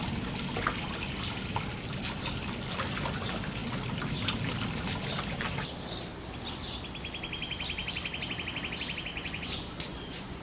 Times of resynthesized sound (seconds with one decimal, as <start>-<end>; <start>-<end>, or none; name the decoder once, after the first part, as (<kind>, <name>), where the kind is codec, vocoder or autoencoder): 9.1-10.4 (vocoder, Vocos)